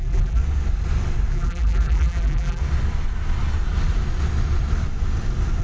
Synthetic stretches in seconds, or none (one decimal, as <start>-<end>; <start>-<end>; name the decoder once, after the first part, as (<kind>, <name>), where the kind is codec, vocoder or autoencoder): 0.0-0.4 (vocoder, BigVGAN v2); 1.3-2.6